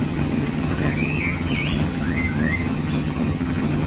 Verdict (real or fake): fake